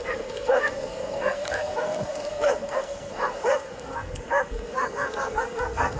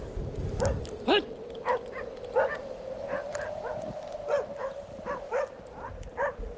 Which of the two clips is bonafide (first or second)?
second